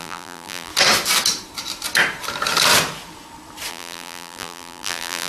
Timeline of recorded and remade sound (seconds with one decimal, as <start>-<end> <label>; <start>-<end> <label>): 0.0-0.7 remade; 0.7-3.7 recorded; 3.7-5.3 remade